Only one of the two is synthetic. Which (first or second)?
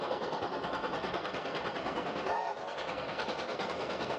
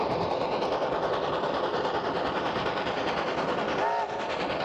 first